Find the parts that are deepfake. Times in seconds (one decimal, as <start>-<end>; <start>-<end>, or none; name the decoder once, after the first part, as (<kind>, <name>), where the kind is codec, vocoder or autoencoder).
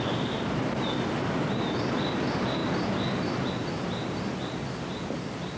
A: none